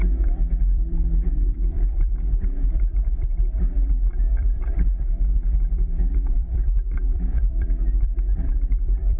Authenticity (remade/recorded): remade